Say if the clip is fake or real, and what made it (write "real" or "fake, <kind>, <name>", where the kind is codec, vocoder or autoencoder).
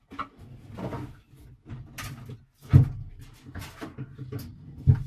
real